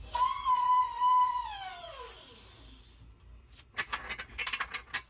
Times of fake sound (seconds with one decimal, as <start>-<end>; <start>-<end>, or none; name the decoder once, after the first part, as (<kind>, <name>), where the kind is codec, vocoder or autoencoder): none